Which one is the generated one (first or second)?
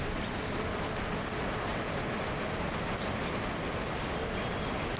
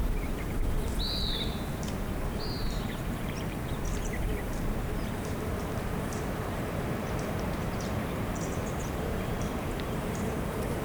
second